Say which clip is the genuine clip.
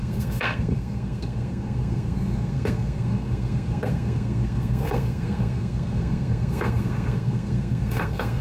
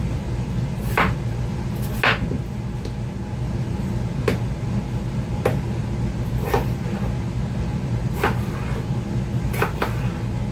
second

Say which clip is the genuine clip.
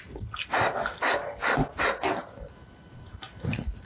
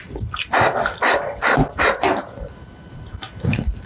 first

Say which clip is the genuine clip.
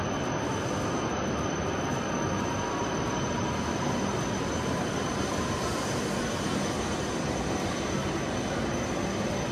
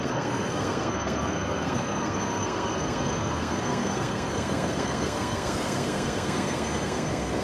first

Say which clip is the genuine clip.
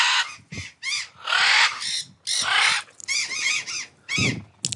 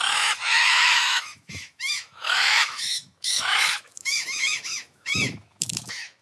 first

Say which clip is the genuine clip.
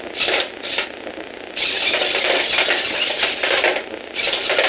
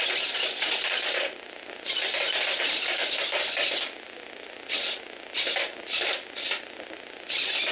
second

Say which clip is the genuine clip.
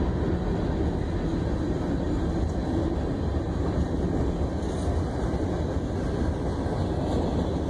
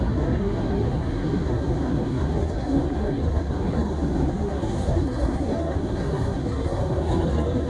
first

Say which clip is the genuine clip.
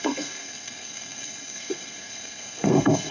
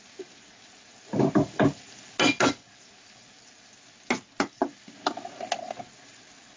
second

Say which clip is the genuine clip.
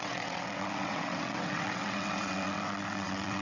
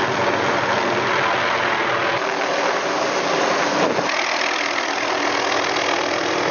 second